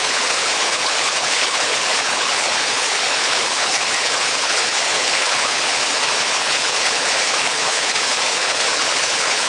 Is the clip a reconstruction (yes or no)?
yes